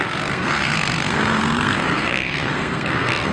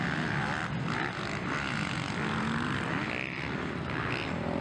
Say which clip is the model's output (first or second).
first